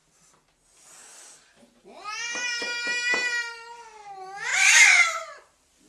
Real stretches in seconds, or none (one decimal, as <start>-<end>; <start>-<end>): 0.0-5.9